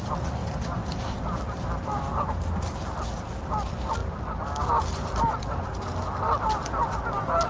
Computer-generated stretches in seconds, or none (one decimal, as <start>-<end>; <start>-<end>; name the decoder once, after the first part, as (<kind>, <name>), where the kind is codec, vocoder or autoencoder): none